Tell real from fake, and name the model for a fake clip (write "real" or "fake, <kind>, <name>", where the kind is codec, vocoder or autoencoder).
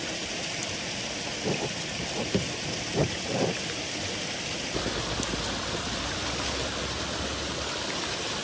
real